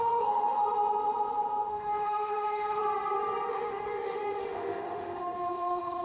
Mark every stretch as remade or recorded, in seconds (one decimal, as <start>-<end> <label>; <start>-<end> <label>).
0.0-0.6 remade; 0.6-1.7 recorded; 1.7-2.8 remade; 2.8-3.5 recorded; 3.5-6.0 remade